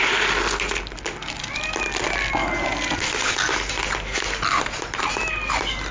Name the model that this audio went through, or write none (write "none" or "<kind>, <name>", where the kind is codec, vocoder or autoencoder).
none